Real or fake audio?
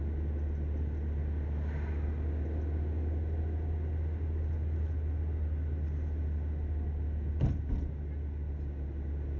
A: real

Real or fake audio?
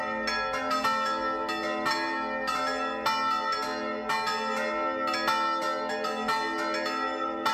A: real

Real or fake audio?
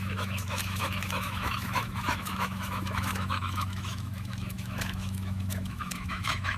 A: fake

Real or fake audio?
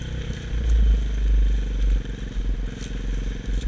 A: real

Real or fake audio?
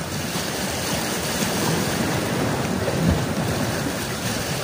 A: real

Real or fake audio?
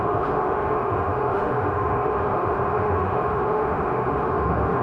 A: fake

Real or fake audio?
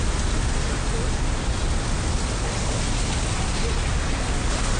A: real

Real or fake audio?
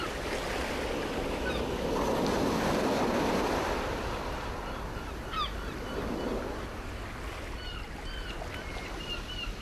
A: real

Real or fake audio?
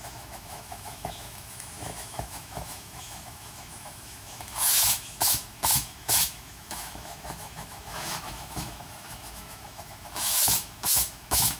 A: fake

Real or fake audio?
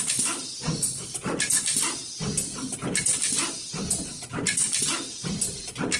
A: real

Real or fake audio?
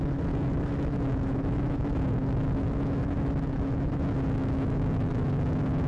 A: fake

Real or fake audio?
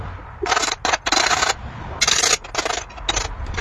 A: real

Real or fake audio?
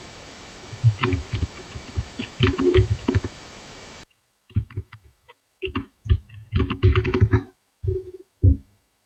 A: fake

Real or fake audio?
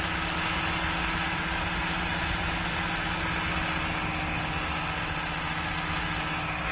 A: real